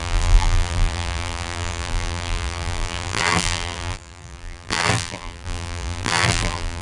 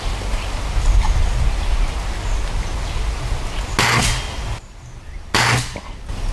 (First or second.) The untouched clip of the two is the second